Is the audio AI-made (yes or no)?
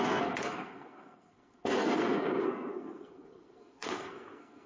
yes